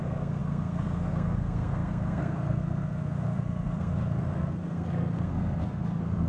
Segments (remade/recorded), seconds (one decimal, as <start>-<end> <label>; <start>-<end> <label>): 0.0-6.3 remade